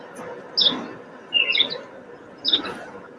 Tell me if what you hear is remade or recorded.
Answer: recorded